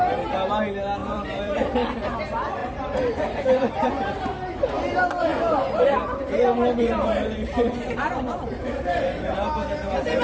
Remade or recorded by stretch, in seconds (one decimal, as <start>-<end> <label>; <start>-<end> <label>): 0.0-1.0 recorded; 1.0-2.1 remade; 2.1-2.6 recorded; 2.6-3.9 remade; 3.9-5.3 recorded; 5.3-8.5 remade; 8.5-10.2 recorded